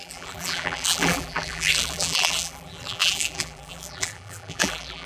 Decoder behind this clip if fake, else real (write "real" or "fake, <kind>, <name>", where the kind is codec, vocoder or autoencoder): fake, vocoder, BigVGAN v2